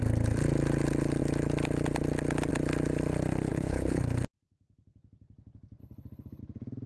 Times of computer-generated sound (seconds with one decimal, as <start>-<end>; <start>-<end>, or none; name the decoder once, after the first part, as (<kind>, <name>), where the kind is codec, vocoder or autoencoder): 3.5-4.0 (codec, HILCodec); 5.8-6.4